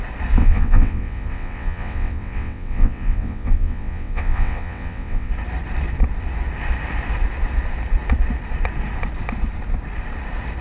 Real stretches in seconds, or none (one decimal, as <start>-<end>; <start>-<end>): 0.0-0.4; 5.3-10.6